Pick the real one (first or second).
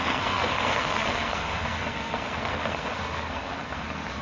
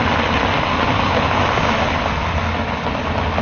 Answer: second